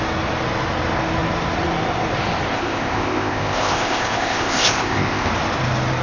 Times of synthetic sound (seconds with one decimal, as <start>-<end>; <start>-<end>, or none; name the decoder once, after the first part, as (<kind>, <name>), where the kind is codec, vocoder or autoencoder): 2.5-5.3 (codec, ZipCodec)